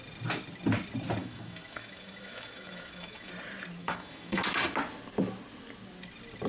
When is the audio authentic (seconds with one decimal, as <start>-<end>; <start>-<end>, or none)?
0.0-1.2; 3.3-3.8; 4.4-6.5